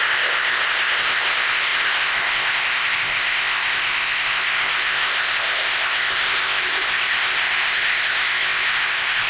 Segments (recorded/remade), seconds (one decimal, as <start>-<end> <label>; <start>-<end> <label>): 0.0-9.3 remade